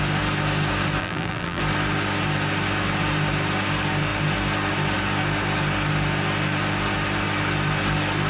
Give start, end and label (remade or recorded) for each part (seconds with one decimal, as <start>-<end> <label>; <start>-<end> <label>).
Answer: 0.0-1.0 recorded; 1.0-1.6 remade; 1.6-8.3 recorded